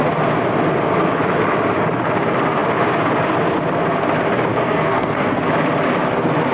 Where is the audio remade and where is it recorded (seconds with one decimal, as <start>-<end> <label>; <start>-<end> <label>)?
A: 0.0-4.5 recorded; 4.5-5.4 remade; 5.4-6.5 recorded